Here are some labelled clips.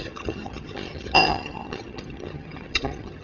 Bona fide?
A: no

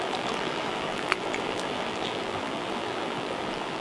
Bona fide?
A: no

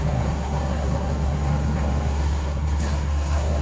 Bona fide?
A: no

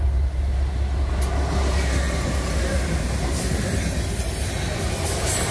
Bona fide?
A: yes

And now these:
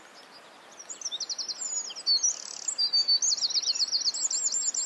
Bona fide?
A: yes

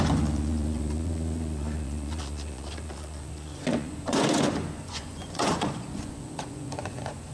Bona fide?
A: no